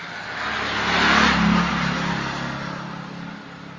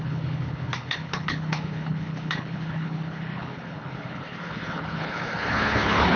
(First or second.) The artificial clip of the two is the second